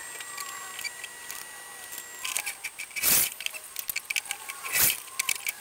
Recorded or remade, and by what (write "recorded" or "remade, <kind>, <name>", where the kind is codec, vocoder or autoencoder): recorded